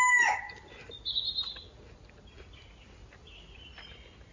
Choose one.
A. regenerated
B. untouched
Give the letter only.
B